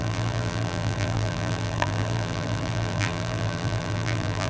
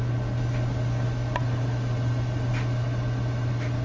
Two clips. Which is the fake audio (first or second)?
first